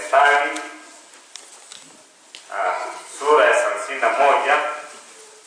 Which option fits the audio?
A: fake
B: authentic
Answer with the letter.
B